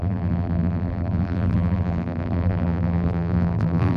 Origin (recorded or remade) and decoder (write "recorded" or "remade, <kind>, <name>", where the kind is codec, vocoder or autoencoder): remade, vocoder, BigVGAN v2